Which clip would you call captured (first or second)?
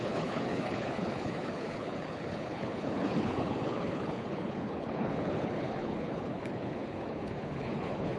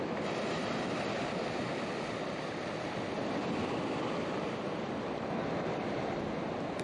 second